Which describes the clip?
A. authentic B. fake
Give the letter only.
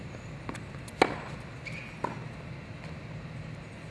A